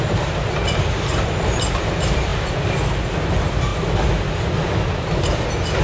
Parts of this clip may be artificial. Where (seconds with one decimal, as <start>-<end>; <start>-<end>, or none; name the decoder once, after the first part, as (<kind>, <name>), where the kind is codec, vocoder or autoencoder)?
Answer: 0.0-3.7 (vocoder, BigVGAN v2)